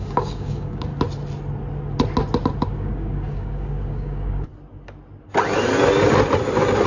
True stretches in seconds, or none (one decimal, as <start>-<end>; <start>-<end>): 0.9-2.7; 4.5-6.9